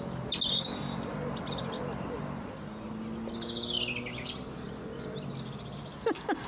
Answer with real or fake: real